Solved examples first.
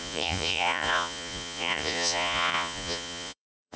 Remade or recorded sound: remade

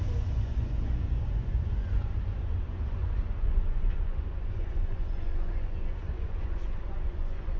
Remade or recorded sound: remade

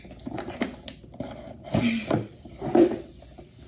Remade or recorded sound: recorded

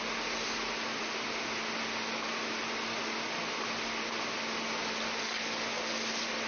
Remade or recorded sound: recorded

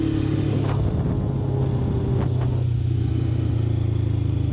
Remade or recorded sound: recorded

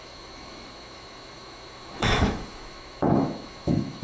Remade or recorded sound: remade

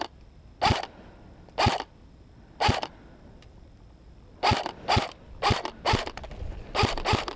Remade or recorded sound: recorded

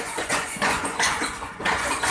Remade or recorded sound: remade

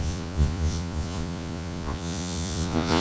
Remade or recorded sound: remade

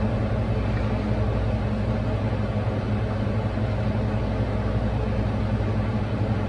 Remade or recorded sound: recorded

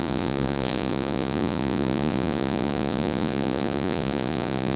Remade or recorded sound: remade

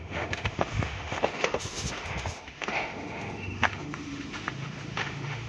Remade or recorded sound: remade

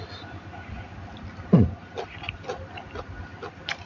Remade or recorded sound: recorded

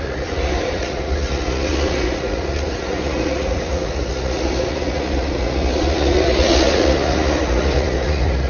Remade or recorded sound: remade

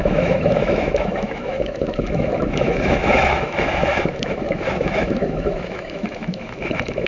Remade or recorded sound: remade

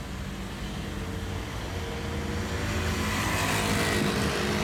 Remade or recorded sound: recorded